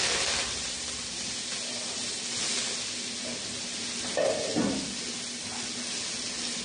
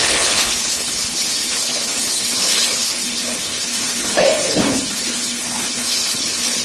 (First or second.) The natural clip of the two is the first